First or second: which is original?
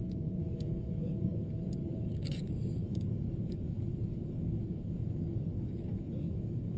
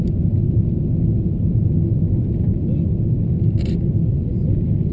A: second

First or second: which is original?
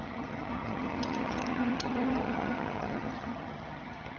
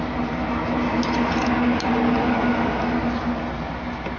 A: second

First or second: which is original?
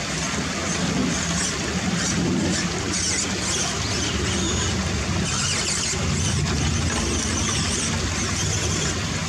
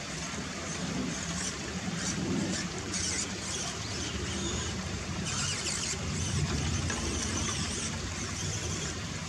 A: first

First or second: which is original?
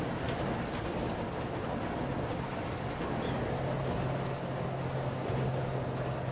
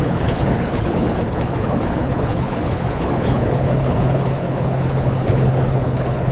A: first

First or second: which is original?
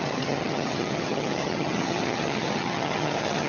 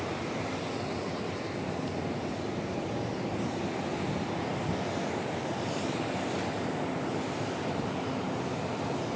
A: second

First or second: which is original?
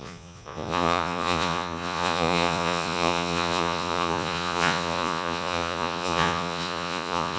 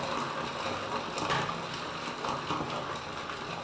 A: second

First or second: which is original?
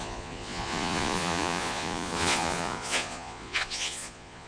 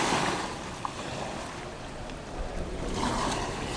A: second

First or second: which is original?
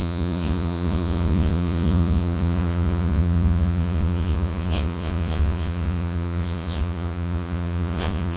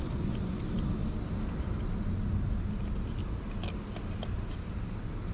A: second